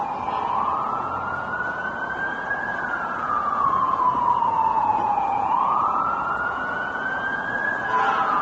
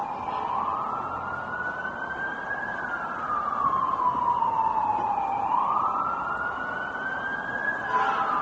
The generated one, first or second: first